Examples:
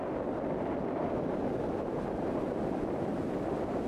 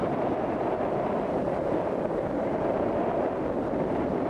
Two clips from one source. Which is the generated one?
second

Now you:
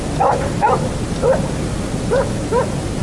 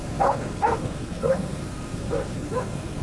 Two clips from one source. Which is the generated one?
second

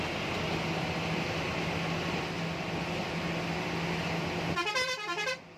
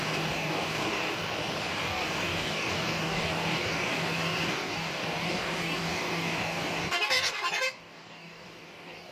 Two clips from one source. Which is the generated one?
second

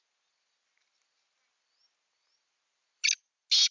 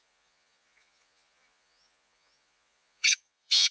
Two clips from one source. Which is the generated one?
second